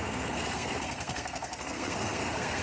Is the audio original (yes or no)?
no